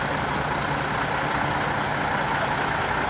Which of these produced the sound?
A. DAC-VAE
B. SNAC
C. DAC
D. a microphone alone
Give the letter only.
D